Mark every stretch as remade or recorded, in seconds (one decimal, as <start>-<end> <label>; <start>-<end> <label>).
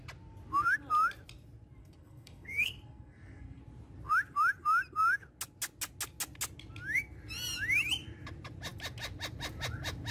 0.0-1.8 recorded; 1.8-3.6 remade; 3.6-10.1 recorded